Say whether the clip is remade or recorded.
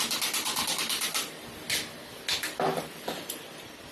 recorded